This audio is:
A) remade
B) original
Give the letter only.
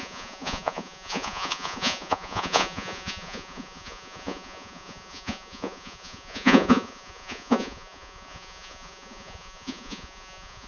A